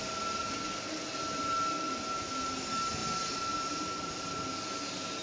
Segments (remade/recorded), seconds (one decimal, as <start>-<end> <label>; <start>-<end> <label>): 0.0-5.2 recorded